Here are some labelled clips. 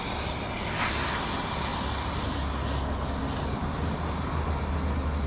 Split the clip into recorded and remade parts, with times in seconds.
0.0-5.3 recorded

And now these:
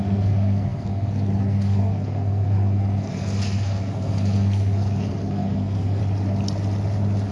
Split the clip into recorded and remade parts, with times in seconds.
0.0-6.0 remade; 6.0-7.3 recorded

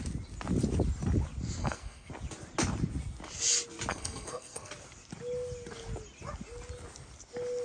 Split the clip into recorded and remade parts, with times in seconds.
0.0-1.6 recorded; 1.6-2.1 remade; 2.1-3.9 recorded; 3.9-4.7 remade; 4.7-7.6 recorded

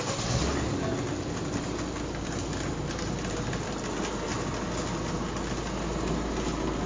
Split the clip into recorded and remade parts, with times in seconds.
0.0-6.9 recorded

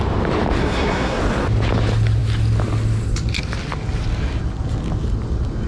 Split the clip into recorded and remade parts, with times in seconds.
0.0-0.6 recorded; 0.6-1.2 remade; 1.2-5.7 recorded

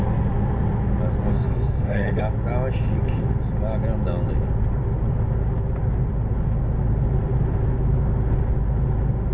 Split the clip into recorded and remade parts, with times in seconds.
0.0-1.3 recorded; 1.3-2.2 remade; 2.2-9.3 recorded

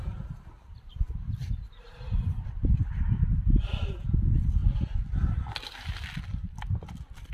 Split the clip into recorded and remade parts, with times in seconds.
0.0-7.3 recorded

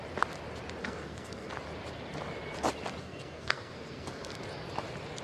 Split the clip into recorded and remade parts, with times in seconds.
0.0-0.8 recorded; 0.8-1.5 remade; 1.5-3.0 recorded; 3.0-4.4 remade; 4.4-5.2 recorded